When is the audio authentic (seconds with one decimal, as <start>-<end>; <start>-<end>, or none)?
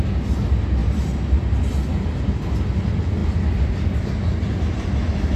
0.0-5.4